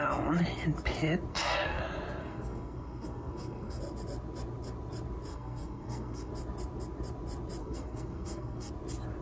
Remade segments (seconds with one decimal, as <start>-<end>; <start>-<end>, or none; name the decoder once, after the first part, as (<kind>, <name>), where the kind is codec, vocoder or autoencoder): 1.3-1.8 (codec, SNAC); 2.2-3.8; 5.3-6.3; 7.6-8.7